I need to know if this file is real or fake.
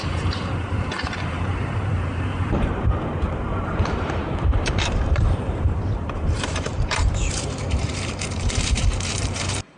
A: fake